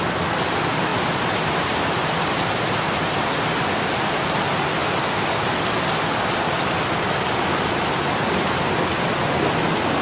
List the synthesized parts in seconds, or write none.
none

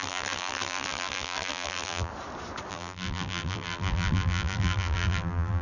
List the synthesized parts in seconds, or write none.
0.0-2.1 (vocoder, BigVGAN v2); 2.7-5.6